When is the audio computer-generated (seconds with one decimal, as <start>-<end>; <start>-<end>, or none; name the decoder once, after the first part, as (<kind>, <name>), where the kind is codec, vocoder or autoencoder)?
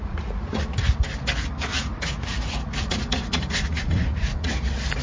0.0-0.6 (vocoder, Vocos); 1.7-4.5